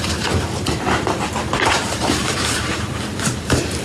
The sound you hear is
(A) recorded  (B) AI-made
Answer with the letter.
B